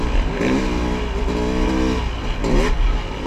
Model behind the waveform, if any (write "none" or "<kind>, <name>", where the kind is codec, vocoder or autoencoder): none